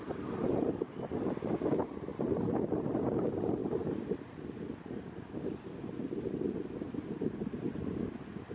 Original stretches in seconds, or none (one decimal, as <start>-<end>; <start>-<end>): 0.0-8.5

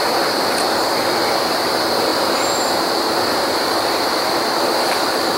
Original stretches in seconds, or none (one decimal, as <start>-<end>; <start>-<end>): 0.0-2.1; 4.1-5.4